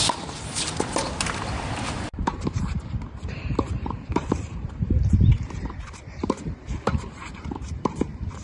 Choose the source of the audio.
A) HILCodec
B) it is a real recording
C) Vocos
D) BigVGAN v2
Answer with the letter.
D